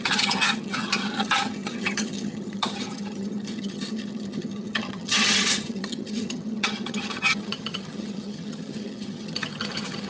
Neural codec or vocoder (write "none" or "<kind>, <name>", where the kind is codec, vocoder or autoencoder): vocoder, HiFi-GAN